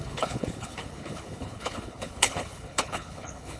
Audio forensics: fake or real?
fake